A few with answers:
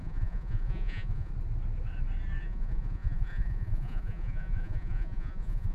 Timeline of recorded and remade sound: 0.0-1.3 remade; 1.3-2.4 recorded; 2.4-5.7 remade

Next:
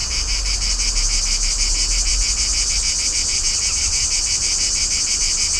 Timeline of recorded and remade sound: 0.0-5.6 recorded